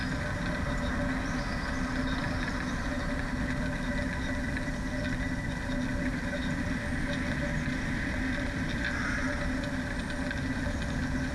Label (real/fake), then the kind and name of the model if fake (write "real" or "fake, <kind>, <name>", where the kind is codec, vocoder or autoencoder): real